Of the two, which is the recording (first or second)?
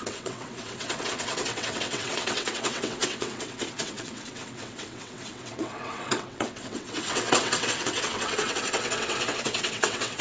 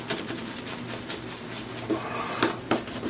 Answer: second